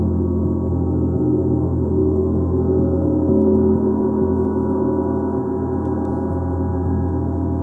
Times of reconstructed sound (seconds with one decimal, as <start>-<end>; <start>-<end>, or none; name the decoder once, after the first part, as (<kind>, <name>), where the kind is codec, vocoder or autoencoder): 2.0-6.1 (autoencoder, DAC-VAE); 6.7-7.6